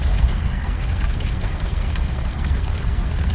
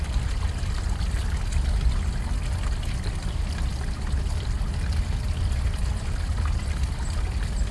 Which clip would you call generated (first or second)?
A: first